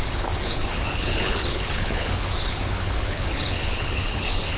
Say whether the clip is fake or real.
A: fake